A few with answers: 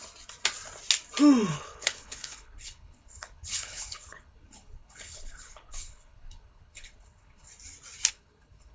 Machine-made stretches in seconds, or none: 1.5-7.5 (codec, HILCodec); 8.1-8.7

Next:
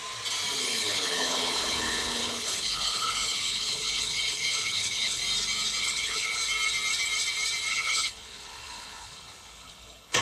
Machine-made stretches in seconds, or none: 0.6-5.2 (codec, HILCodec); 5.8-6.4; 7.7-10.2